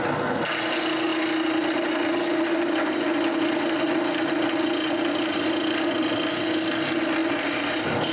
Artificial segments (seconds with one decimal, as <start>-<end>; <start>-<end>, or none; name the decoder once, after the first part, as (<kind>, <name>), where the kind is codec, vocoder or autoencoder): none